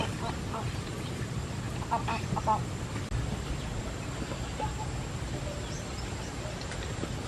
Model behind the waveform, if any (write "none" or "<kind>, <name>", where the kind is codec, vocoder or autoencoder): none